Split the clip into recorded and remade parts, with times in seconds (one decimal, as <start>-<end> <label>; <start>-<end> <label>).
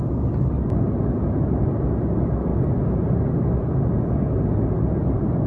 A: 0.0-5.5 recorded